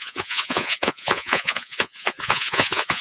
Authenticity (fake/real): fake